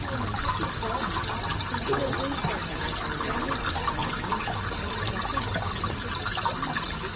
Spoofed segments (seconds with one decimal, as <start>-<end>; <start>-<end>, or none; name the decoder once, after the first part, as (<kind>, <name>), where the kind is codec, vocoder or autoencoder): none